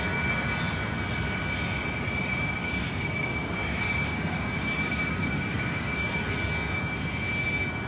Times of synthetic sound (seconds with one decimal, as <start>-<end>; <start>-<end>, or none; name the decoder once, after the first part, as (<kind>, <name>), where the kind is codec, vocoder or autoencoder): 2.6-6.2 (codec, DAC)